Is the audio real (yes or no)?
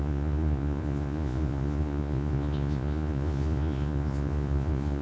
no